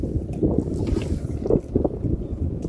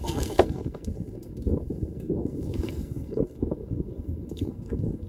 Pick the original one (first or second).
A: first